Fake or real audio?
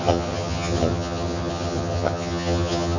fake